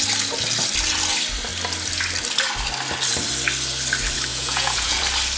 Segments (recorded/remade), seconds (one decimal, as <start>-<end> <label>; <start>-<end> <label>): 0.0-4.3 recorded; 4.3-5.0 remade; 5.0-5.4 recorded